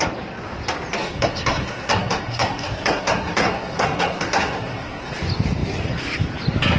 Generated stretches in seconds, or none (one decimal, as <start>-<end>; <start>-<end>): 1.0-5.1